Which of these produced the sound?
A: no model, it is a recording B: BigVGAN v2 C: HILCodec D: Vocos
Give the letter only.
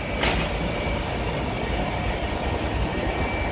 A